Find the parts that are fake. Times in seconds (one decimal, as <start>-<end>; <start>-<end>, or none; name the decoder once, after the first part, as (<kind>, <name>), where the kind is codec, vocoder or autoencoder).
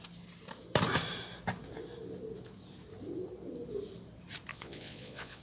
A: 4.5-5.4 (vocoder, Vocos)